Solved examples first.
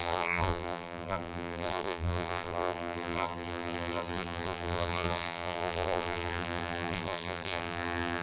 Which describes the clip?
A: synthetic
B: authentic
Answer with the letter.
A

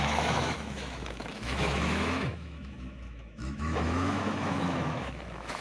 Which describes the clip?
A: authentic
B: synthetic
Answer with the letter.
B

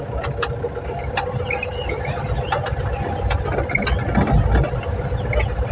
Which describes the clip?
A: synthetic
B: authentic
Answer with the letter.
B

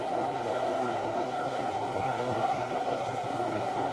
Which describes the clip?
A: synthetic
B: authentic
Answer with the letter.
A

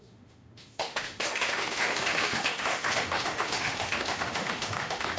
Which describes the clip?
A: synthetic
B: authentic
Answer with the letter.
A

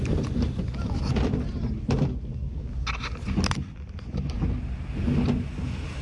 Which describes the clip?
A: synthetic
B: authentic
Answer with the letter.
B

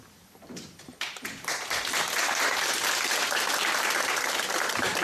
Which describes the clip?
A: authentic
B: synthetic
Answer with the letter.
A